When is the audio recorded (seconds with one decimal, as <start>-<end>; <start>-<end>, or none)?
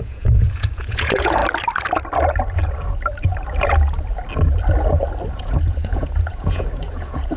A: 1.4-5.3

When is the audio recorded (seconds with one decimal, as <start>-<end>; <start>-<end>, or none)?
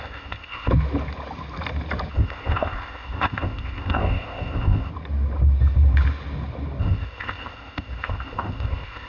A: 0.7-2.1; 4.9-6.8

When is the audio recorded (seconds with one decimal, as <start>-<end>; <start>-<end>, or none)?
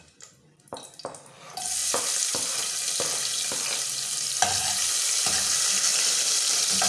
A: 0.0-1.8; 2.6-5.9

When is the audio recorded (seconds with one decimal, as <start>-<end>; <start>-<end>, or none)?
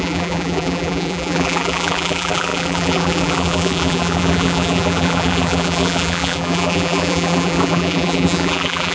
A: none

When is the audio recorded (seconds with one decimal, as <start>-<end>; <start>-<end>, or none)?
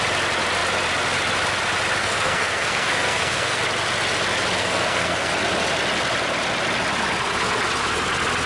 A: 0.0-2.0; 3.6-4.6; 5.3-8.5